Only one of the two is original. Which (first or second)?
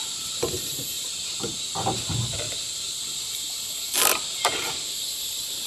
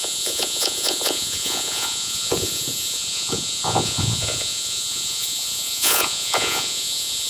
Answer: first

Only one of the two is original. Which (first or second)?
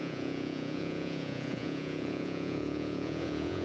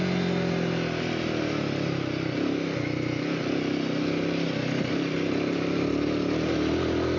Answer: second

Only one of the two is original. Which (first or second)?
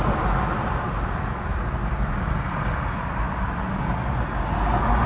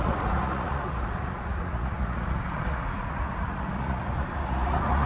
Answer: first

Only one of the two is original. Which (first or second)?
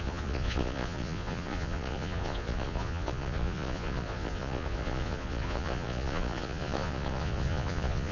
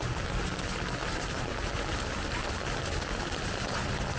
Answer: second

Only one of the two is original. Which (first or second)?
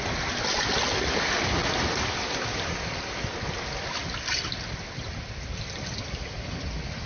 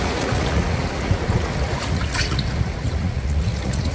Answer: first